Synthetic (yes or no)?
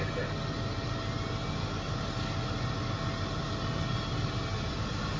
no